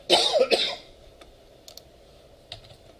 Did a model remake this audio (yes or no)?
no